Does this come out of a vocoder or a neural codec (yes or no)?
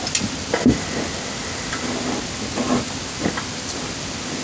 no